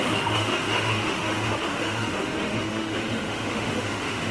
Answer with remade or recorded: remade